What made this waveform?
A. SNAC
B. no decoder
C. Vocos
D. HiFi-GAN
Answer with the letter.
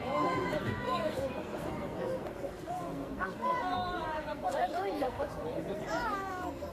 A